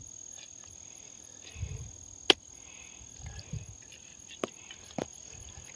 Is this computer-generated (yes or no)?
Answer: no